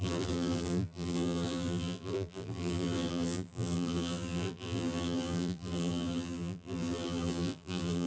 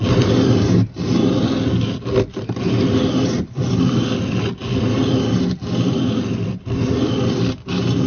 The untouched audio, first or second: second